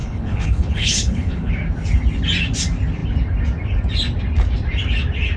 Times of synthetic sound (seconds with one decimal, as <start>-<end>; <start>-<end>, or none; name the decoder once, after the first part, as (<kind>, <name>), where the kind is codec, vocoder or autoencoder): 0.0-1.5 (codec, HILCodec)